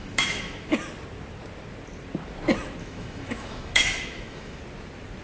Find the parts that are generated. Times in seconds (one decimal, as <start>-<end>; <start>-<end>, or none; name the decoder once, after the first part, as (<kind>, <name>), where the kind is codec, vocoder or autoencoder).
0.0-0.7 (autoencoder, DAC-VAE); 2.8-4.6